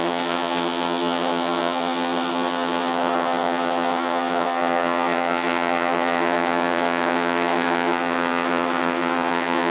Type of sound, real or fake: fake